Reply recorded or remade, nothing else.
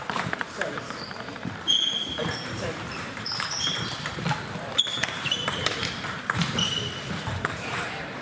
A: remade